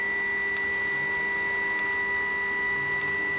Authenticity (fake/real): real